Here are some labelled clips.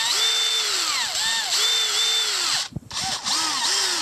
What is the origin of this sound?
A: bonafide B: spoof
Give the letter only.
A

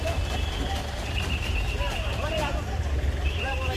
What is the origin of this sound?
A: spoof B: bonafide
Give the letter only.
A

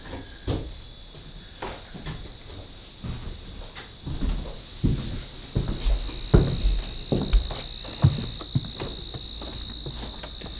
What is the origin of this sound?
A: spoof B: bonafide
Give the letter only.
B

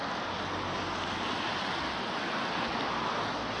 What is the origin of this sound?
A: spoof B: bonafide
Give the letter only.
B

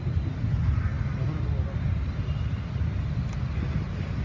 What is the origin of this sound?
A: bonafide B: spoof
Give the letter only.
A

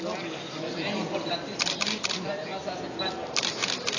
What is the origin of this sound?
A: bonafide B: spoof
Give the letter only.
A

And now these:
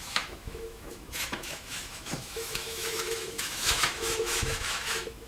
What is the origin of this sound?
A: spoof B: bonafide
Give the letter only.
A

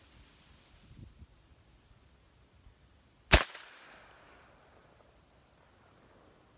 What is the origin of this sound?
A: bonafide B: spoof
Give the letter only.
A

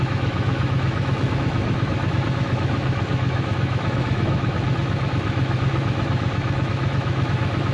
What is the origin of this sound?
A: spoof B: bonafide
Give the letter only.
A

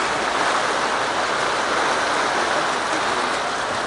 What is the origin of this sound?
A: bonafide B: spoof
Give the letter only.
A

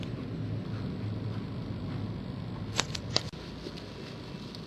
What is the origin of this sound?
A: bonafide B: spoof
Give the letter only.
A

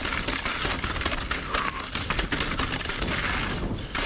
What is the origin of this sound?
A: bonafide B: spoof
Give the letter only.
A